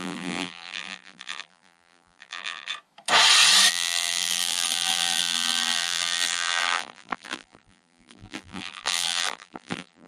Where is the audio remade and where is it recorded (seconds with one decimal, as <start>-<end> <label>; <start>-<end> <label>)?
0.0-2.7 remade; 2.7-3.7 recorded; 3.7-10.1 remade